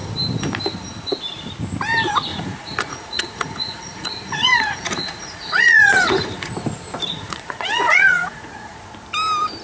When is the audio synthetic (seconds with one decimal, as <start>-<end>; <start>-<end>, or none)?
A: 2.3-6.5; 7.1-8.8